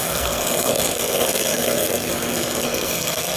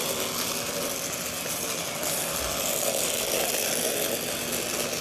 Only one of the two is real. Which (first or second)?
second